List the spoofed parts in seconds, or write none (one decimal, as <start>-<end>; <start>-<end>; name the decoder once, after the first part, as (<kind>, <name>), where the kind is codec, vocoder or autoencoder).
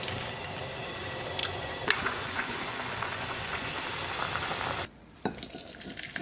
1.4-3.7 (vocoder, Vocos)